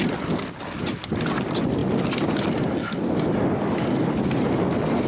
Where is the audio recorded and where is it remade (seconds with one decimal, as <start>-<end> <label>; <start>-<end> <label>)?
0.0-5.1 recorded